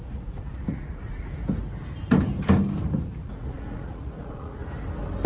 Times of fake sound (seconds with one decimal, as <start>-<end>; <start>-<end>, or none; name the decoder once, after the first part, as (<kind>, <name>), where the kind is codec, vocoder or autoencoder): 0.0-1.4 (vocoder, Vocos); 3.2-4.6